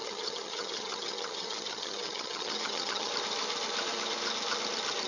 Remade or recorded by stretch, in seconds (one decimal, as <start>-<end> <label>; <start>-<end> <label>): 0.0-3.1 remade; 3.1-5.1 recorded